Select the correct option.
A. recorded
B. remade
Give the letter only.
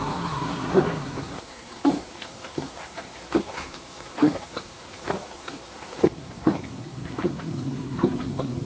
B